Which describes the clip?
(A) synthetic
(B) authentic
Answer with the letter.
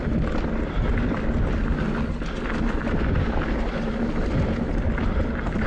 B